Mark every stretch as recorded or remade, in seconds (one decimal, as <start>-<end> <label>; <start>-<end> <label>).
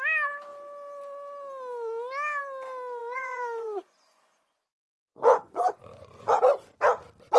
0.0-3.0 recorded; 3.0-6.4 remade; 6.4-7.4 recorded